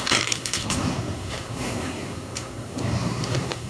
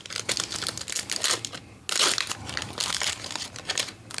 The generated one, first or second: first